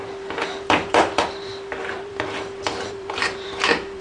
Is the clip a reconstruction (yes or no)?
yes